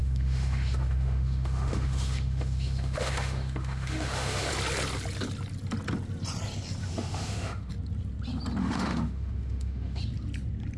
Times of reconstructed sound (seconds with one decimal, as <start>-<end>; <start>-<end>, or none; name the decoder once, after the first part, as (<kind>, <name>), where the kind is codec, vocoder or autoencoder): 0.0-4.5 (autoencoder, DAC-VAE); 6.8-7.7; 8.6-10.0